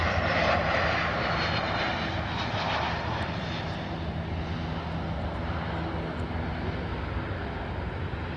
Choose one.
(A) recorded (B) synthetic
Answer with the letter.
A